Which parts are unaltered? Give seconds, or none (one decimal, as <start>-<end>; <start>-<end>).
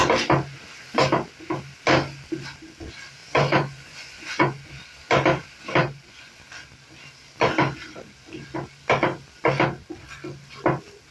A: 0.0-3.2; 4.7-5.8; 6.3-11.1